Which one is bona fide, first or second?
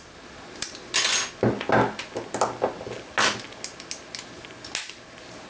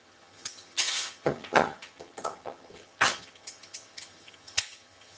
first